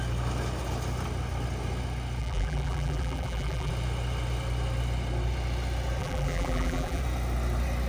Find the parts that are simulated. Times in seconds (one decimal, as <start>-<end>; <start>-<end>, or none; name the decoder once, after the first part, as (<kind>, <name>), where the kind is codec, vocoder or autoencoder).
2.2-3.7 (vocoder, BigVGAN v2); 6.0-7.0